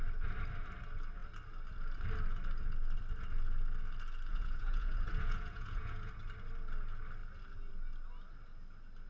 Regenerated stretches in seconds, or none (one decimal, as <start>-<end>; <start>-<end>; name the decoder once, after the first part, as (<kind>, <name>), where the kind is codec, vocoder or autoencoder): 4.3-6.1 (vocoder, Vocos)